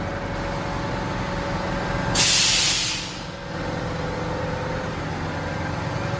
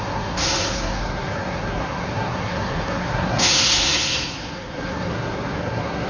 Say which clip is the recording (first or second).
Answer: first